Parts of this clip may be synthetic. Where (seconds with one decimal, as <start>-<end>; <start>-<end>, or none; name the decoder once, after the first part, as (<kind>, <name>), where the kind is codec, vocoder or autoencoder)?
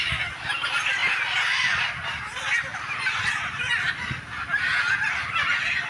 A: 2.7-3.9 (vocoder, BigVGAN v2)